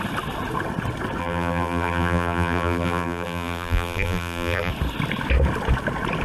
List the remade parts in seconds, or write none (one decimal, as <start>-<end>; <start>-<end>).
1.2-4.7